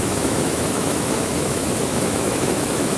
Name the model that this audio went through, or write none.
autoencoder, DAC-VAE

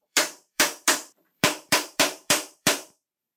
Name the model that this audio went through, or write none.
vocoder, BigVGAN v2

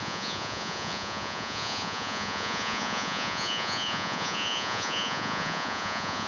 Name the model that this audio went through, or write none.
vocoder, Vocos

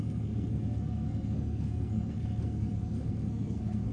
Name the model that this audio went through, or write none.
codec, SNAC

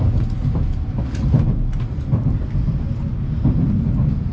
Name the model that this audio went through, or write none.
none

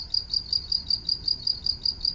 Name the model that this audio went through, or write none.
none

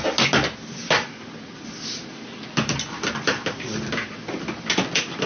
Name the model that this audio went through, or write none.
none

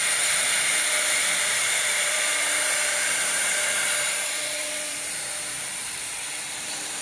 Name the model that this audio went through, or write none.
vocoder, BigVGAN v2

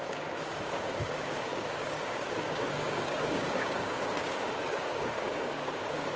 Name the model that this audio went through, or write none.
codec, DAC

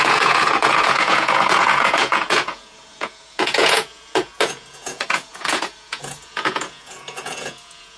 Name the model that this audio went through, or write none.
vocoder, Vocos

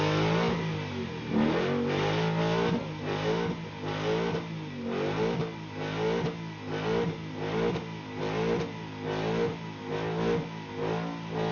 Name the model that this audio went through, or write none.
none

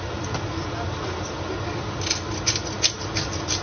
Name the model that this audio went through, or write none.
none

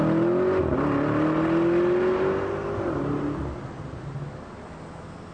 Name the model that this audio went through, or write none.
none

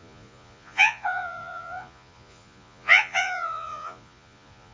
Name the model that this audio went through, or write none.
vocoder, Vocos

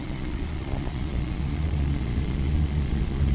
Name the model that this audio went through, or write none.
vocoder, Vocos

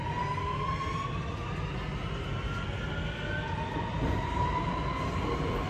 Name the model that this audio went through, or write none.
none